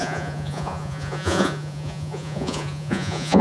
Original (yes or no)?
no